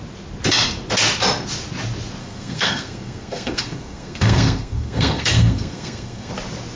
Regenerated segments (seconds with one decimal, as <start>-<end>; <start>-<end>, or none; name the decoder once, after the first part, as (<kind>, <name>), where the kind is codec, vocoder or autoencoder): 2.2-6.3 (codec, SNAC)

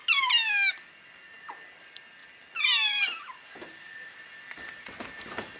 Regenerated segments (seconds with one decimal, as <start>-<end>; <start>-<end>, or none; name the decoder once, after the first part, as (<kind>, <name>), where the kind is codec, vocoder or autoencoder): none

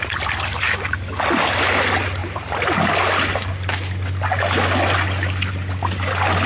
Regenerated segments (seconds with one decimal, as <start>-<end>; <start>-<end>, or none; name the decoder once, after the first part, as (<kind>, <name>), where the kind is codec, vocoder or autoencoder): none